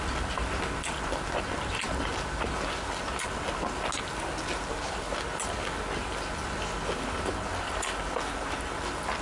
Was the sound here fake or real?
real